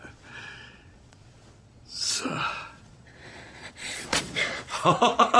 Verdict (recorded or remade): remade